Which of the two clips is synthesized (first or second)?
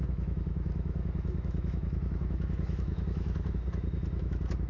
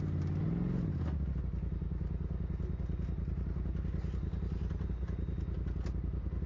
first